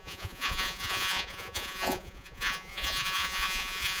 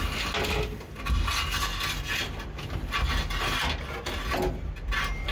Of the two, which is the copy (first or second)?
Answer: first